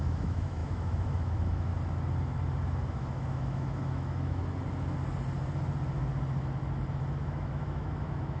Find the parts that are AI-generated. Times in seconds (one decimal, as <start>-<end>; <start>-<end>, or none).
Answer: 0.0-1.7; 2.9-4.4; 7.2-8.4